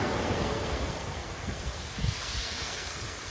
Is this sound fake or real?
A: fake